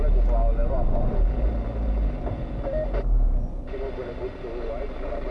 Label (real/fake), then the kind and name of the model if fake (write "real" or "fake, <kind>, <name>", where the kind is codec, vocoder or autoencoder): real